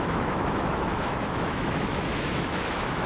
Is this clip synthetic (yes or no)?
yes